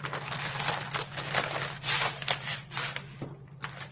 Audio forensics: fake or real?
real